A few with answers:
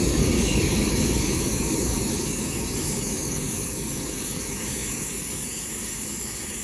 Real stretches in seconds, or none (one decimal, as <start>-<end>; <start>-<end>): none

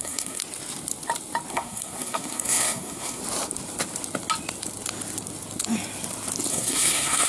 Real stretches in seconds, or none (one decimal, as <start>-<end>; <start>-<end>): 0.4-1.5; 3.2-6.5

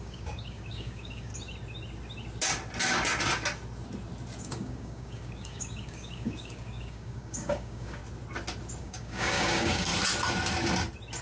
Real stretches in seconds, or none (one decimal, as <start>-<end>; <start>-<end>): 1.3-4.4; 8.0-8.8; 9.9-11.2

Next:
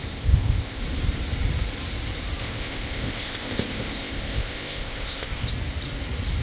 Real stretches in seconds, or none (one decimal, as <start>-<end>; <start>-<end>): 0.8-2.4; 5.5-6.4